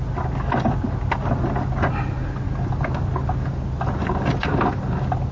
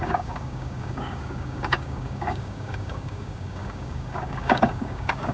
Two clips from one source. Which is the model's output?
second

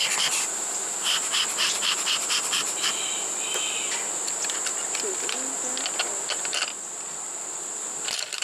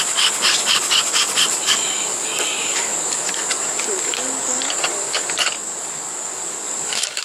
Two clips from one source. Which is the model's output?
second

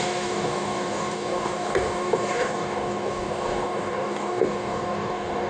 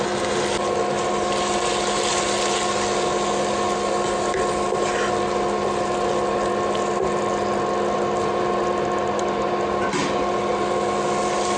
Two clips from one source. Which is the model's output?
first